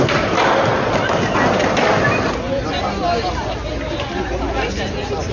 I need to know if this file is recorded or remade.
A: recorded